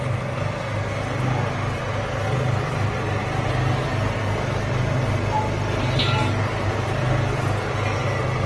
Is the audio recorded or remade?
recorded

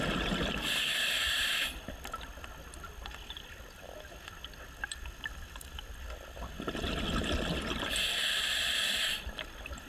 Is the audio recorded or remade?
remade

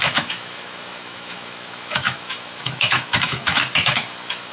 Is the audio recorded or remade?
remade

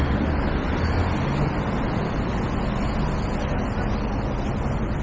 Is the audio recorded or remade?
recorded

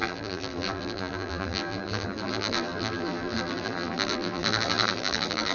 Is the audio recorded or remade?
remade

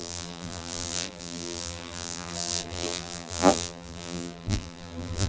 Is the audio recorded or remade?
remade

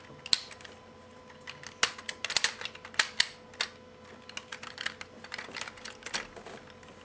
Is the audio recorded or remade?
recorded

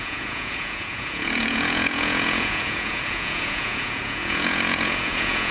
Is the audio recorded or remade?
remade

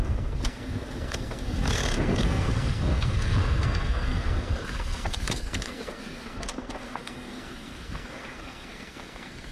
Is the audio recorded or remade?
remade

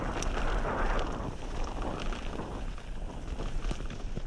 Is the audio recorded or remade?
recorded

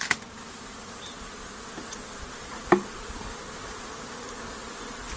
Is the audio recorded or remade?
recorded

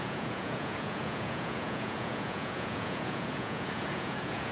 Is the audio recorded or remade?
remade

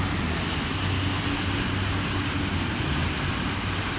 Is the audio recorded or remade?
recorded